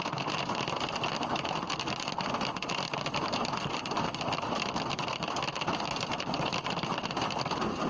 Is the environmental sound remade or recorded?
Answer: remade